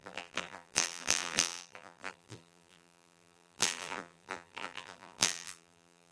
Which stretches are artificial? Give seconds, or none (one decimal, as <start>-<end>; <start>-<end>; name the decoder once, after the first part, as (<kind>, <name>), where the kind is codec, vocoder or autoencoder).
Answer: 0.0-6.1 (vocoder, BigVGAN v2)